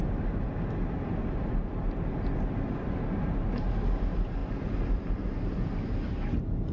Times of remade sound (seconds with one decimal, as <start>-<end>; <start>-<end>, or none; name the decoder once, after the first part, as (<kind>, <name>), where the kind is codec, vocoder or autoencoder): none